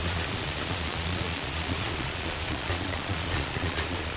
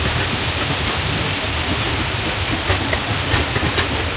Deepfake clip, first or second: first